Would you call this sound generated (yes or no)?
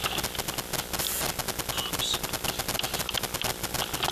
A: no